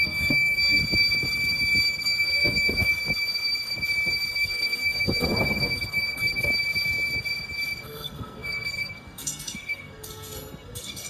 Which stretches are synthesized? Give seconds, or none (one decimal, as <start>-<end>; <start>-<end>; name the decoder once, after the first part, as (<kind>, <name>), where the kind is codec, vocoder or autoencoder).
0.0-0.8 (codec, SNAC); 2.0-2.9; 4.3-6.5; 7.8-11.1